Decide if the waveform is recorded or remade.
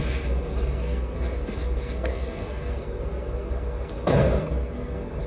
remade